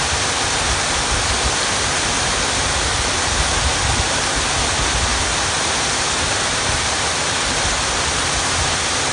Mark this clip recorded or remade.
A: recorded